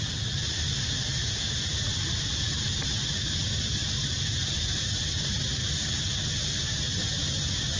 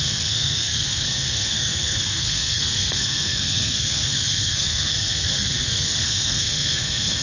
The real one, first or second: first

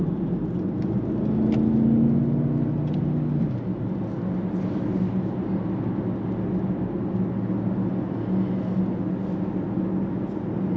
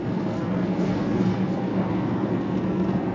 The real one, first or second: first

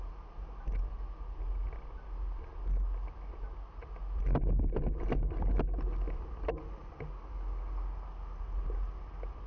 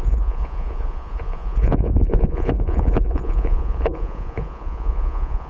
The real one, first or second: first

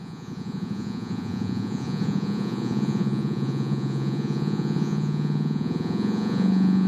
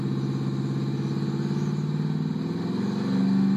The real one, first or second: second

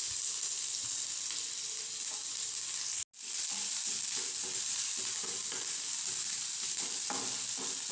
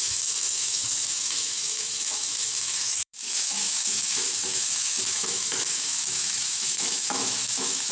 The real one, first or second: first